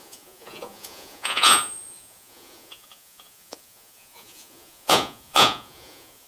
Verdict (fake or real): fake